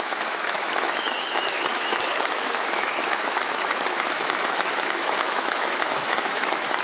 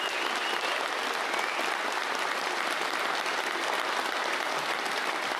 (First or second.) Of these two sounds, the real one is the second